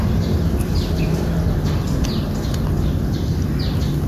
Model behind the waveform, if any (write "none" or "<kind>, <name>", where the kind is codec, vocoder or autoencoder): none